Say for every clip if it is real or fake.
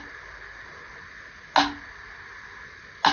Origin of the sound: real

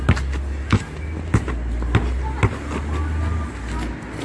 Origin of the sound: real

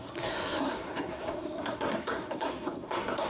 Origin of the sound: fake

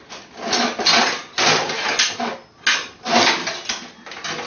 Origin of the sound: real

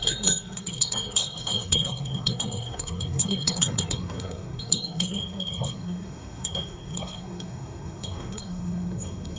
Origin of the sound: fake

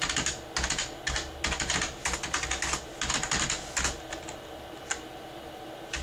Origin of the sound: real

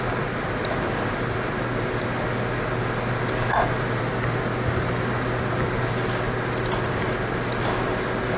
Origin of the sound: real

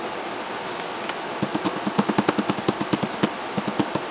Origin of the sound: real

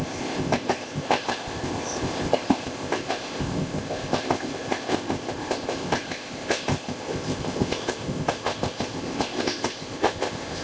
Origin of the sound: fake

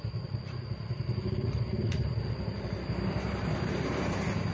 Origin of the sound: fake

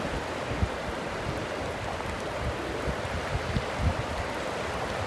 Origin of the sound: real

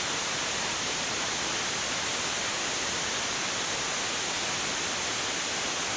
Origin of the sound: real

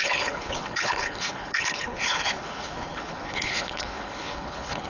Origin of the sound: fake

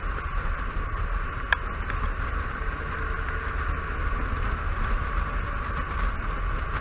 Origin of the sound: real